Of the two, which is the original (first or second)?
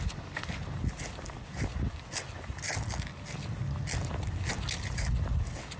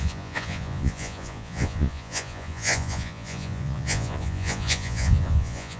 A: first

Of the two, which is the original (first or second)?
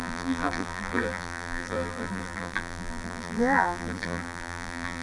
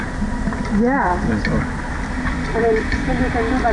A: second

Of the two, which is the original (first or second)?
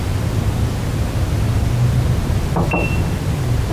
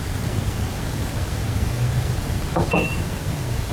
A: first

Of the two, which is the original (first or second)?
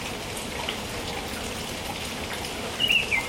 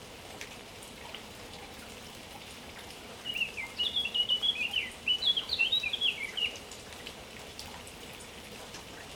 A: first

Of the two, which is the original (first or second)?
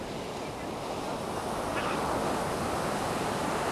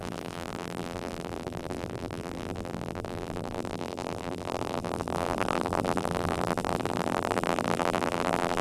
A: first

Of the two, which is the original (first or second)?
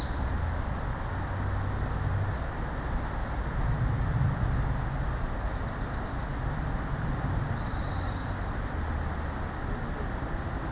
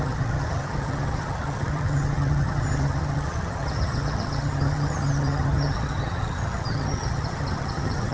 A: first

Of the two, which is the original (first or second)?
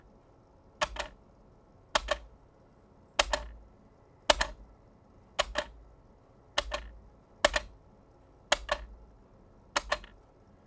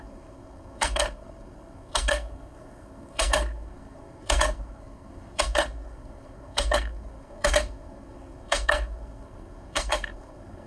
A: first